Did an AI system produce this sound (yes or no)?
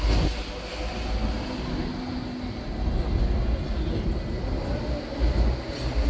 no